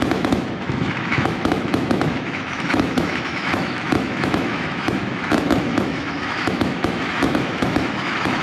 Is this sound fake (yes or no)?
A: yes